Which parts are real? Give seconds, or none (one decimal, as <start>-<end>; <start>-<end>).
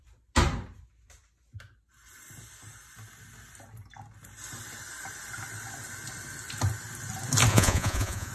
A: 0.0-7.5